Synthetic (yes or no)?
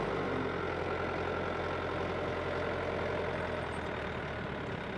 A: no